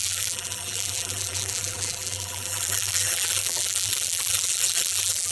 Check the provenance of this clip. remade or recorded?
remade